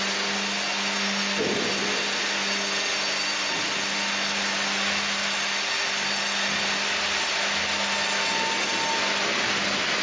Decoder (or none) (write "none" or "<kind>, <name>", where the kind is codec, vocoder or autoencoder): none